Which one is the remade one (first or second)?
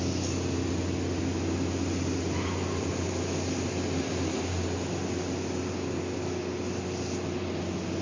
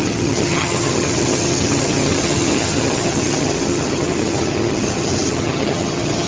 second